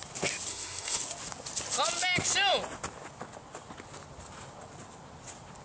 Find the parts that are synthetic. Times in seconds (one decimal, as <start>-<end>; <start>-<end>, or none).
0.5-1.0